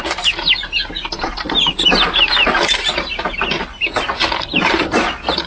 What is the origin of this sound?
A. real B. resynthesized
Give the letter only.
A